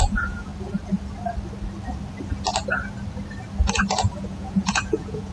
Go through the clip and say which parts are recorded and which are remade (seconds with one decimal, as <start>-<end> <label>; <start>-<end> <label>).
0.0-0.5 remade; 0.5-3.7 recorded; 3.7-5.3 remade